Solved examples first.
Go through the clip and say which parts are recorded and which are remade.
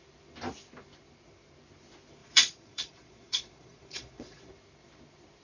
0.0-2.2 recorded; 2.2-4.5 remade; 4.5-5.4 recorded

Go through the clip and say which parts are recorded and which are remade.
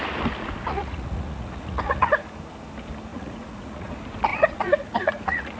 0.0-0.6 recorded; 0.6-2.1 remade; 2.1-3.1 recorded; 3.1-3.9 remade; 3.9-4.3 recorded; 4.3-5.6 remade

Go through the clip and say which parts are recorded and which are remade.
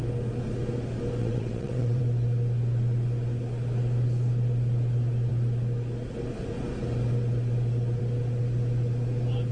0.0-1.2 recorded; 1.2-2.0 remade; 2.0-9.5 recorded